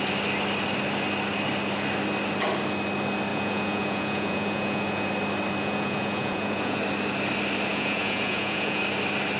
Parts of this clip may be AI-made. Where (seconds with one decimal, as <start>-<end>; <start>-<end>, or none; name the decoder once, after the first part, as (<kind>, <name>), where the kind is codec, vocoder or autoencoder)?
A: 3.3-5.1 (vocoder, Vocos); 5.6-6.8; 7.7-8.8